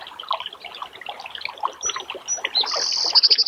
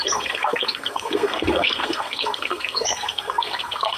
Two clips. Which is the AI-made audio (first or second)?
second